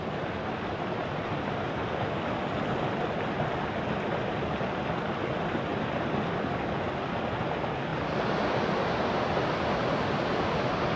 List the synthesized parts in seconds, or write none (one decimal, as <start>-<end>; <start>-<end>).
none